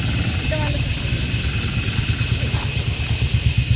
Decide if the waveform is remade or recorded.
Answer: recorded